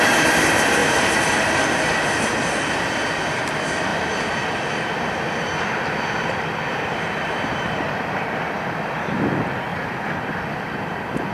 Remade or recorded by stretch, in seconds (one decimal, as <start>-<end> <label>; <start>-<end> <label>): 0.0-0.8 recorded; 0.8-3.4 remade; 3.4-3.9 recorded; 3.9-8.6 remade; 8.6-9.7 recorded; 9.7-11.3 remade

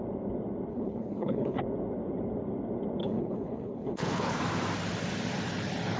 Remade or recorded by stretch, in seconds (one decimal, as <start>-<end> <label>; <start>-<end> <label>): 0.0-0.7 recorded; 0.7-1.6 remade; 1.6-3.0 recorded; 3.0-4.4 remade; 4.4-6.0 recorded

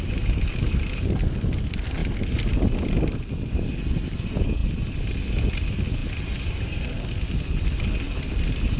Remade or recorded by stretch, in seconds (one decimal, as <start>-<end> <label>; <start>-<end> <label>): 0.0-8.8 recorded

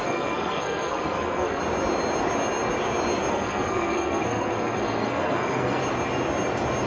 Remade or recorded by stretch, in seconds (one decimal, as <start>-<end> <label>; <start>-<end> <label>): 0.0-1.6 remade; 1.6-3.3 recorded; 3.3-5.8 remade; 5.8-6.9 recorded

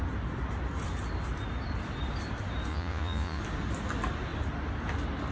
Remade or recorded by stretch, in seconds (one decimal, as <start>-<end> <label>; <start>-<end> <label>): 0.0-2.7 recorded; 2.7-3.4 remade; 3.4-5.3 recorded

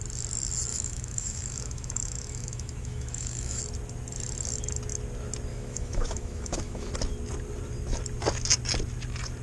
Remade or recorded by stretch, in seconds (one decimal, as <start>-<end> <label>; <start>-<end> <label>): 0.0-0.7 recorded; 0.7-3.6 remade; 3.6-5.5 recorded; 5.5-6.9 remade; 6.9-9.4 recorded